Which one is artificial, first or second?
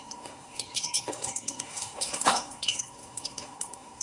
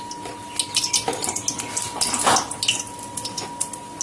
first